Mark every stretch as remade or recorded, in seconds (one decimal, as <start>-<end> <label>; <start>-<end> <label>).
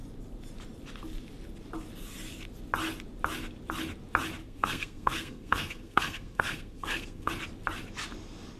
0.0-4.4 recorded; 4.4-7.3 remade; 7.3-8.6 recorded